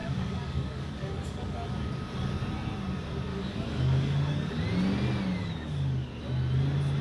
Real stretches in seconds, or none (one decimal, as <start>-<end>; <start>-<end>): 1.7-3.3; 4.6-5.4; 6.1-7.0